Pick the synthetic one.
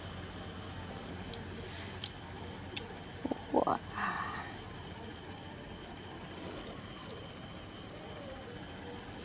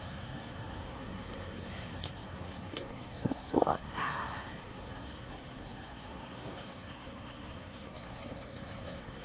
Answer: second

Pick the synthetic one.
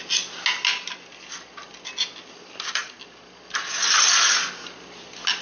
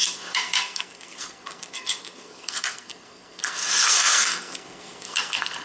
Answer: second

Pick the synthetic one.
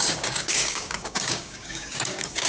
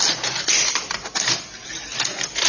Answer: first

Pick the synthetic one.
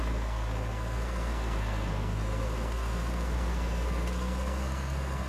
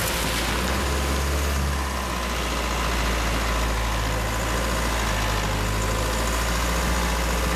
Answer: first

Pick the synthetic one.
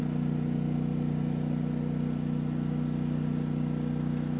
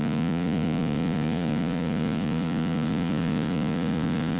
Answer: second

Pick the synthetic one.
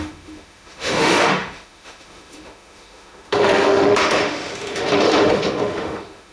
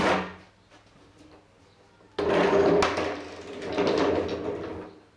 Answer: first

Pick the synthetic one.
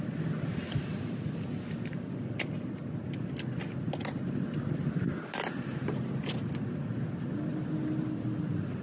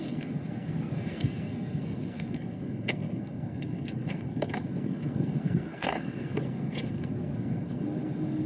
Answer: second